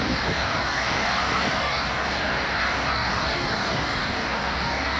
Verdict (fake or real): fake